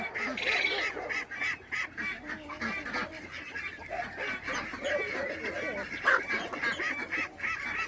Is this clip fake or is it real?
real